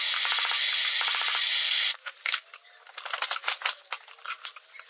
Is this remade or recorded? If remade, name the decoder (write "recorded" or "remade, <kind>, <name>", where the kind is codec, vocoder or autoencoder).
recorded